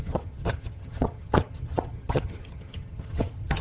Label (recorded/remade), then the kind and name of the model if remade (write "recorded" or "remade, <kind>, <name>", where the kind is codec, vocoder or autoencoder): remade, vocoder, HiFi-GAN